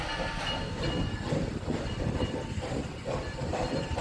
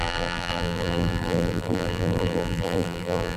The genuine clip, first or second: first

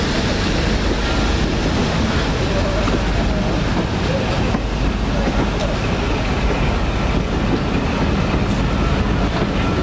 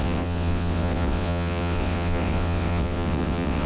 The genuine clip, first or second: first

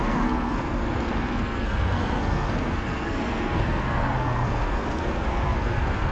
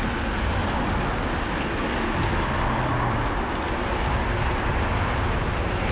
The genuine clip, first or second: second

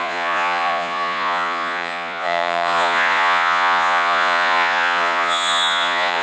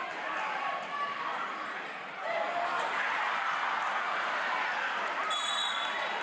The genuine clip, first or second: second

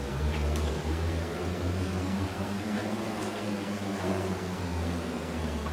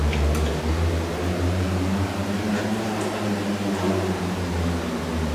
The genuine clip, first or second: second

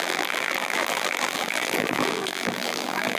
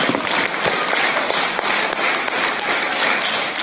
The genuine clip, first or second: second